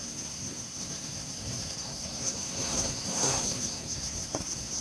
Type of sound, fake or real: fake